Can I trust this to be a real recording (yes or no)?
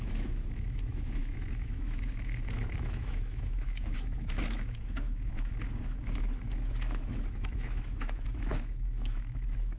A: no